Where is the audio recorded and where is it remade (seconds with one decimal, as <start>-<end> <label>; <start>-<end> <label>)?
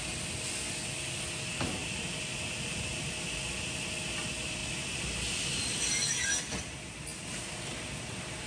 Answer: 0.0-8.5 recorded